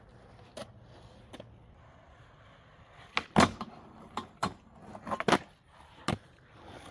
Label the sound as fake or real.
real